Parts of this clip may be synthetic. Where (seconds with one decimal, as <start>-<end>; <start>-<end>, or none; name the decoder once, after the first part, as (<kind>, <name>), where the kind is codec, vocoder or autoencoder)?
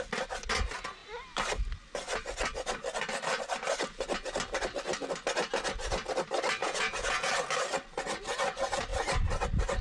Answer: 6.6-7.3 (vocoder, Vocos)